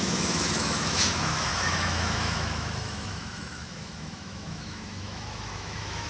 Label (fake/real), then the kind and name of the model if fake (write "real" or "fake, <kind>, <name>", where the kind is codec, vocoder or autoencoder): fake, autoencoder, DAC-VAE